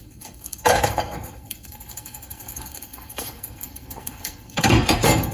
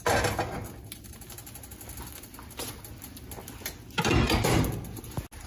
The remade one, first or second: first